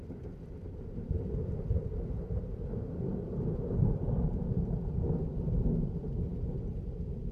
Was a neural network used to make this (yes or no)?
no